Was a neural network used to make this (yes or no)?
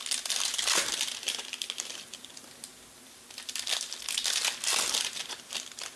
no